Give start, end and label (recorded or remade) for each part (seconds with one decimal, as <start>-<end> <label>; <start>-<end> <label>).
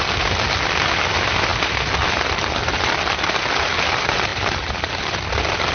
0.0-1.5 recorded; 1.5-3.2 remade; 3.2-4.3 recorded; 4.3-5.7 remade